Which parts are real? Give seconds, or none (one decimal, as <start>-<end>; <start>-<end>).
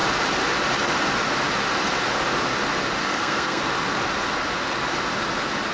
0.0-3.0; 3.6-5.7